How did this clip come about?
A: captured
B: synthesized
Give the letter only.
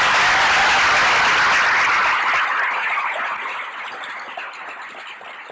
A